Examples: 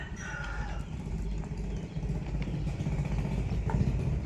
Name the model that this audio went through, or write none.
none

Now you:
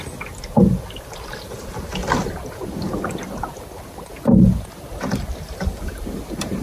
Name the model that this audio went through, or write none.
none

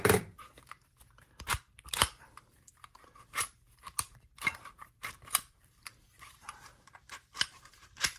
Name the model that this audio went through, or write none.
vocoder, BigVGAN v2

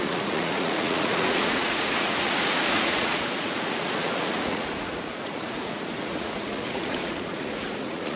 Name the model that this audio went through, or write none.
vocoder, Vocos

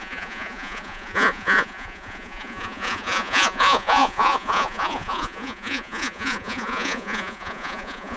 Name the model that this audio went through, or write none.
vocoder, Vocos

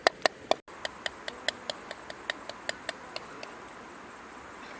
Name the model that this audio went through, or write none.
none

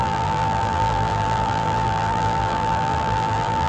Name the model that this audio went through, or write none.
vocoder, BigVGAN v2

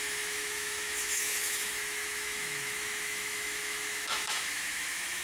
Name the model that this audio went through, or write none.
autoencoder, DAC-VAE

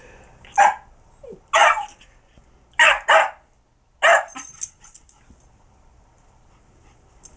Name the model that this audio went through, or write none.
none